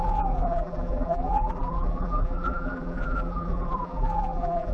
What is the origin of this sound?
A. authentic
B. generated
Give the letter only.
B